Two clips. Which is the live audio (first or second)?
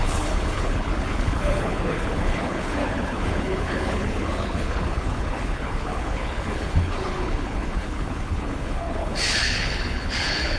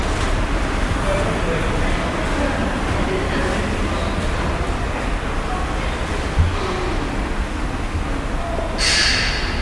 second